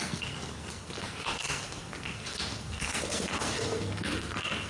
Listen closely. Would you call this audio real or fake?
fake